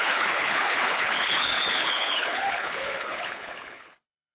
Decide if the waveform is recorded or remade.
remade